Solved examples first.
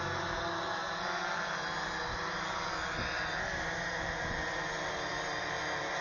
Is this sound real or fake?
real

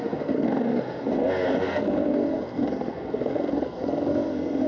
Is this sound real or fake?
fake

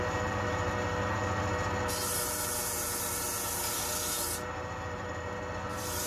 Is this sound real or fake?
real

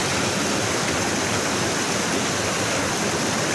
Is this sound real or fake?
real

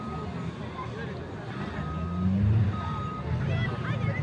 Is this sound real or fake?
real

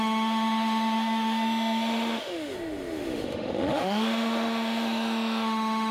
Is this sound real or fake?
fake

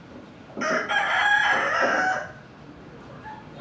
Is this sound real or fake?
real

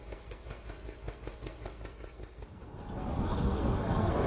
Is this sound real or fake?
fake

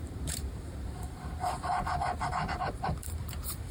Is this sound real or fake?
fake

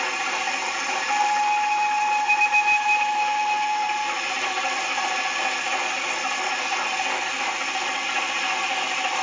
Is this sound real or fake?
real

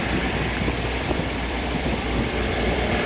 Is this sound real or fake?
fake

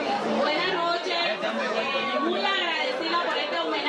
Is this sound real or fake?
real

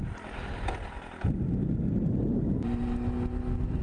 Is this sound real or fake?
real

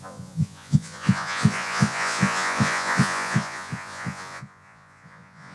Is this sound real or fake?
fake